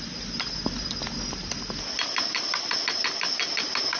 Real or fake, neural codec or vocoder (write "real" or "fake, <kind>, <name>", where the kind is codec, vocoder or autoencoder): real